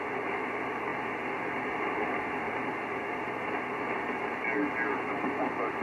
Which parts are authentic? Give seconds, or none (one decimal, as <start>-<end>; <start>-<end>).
0.0-5.8